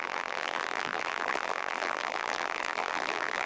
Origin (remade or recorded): remade